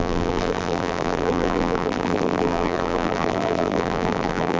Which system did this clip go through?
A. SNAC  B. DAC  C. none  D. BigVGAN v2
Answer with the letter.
D